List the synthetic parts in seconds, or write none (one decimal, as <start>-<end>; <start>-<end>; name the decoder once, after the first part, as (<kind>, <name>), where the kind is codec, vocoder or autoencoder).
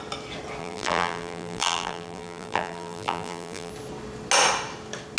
0.6-3.7 (vocoder, BigVGAN v2)